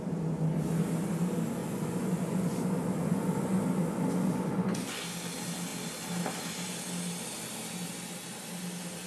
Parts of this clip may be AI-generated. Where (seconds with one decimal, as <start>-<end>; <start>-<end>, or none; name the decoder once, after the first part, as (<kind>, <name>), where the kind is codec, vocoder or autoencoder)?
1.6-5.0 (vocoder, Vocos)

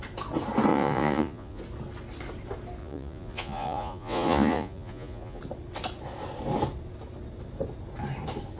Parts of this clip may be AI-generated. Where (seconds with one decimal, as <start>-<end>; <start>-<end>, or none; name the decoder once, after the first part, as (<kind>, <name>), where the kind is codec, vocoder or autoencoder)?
0.7-1.6 (vocoder, Vocos); 2.8-5.4

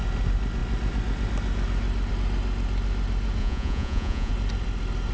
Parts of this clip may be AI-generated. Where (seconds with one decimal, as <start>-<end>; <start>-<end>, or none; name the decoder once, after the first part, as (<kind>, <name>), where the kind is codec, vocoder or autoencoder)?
3.4-4.3 (vocoder, Vocos)

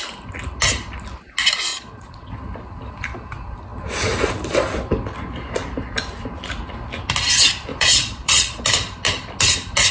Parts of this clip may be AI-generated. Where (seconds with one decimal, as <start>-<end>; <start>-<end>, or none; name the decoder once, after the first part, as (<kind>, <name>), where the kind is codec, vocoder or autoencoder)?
1.7-2.3 (vocoder, Vocos); 7.7-8.6

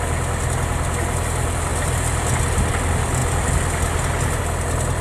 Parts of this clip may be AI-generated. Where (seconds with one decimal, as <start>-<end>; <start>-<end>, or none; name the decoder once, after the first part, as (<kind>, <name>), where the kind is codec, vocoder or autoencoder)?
none

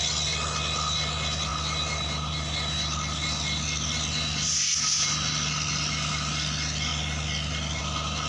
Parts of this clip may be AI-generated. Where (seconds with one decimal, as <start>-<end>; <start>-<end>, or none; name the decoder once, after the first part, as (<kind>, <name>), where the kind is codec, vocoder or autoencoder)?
none

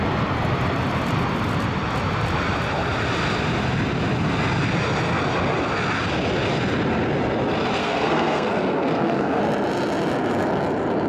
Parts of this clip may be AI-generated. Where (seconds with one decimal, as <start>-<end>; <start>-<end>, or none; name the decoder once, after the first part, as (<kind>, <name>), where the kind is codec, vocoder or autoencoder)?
7.8-9.4 (codec, SNAC)

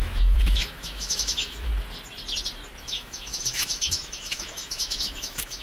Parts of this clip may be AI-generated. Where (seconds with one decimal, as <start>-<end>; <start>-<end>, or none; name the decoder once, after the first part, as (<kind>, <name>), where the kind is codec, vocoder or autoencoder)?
0.0-1.7 (autoencoder, DAC-VAE); 2.8-5.6